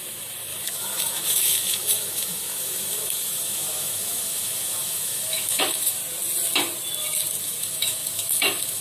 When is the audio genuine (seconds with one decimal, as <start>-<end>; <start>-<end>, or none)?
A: 6.0-7.4